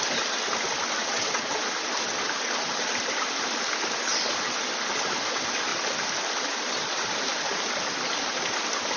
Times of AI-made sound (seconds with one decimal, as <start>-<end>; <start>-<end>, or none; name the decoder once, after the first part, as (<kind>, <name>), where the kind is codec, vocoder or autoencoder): 1.0-1.6 (vocoder, WaveNeXt)